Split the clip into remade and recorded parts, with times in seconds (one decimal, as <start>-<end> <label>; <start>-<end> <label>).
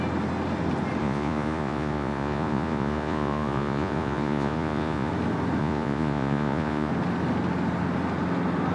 0.0-1.0 recorded; 1.0-5.1 remade; 5.1-5.6 recorded; 5.6-6.9 remade; 6.9-8.7 recorded